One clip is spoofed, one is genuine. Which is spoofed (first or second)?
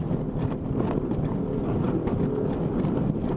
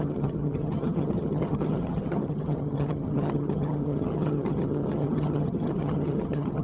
second